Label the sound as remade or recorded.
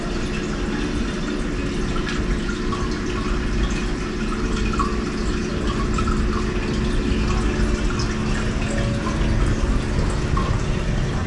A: recorded